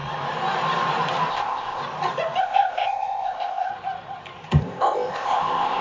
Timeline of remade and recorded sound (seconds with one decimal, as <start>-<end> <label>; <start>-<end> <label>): 0.0-1.3 recorded; 1.3-1.8 remade; 1.8-2.4 recorded; 2.4-3.7 remade; 3.7-4.6 recorded; 4.6-5.8 remade